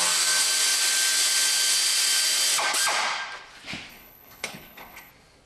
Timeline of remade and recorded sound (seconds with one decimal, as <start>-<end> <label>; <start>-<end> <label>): 0.0-3.9 recorded; 3.9-5.1 remade; 5.1-5.5 recorded